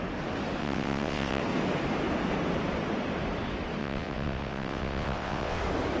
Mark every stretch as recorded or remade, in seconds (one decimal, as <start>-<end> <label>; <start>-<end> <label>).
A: 0.0-0.6 recorded; 0.6-1.4 remade; 1.4-3.8 recorded; 3.8-5.6 remade; 5.6-6.0 recorded